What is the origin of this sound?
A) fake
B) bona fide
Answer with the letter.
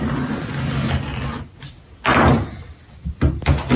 B